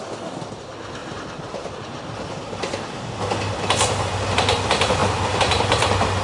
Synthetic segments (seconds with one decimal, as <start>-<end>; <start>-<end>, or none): 1.0-1.8; 5.0-5.7